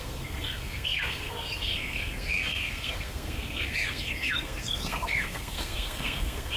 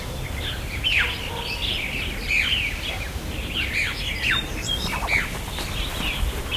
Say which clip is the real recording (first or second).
second